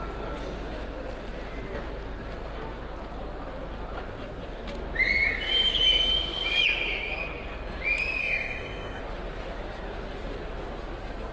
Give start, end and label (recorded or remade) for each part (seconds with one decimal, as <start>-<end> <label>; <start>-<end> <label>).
0.0-8.2 recorded; 8.2-9.0 remade; 9.0-11.3 recorded